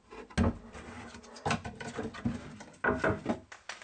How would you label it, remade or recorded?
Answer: recorded